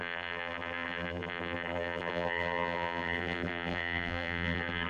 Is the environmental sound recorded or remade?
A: remade